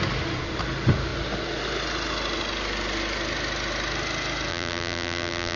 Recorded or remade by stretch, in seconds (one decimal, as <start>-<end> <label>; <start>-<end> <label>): 0.0-4.5 recorded; 4.5-5.6 remade